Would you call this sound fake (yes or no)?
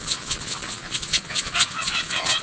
yes